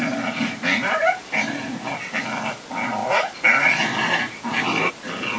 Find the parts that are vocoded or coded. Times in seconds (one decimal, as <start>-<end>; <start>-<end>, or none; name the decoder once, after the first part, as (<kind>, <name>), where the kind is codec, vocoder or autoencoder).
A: none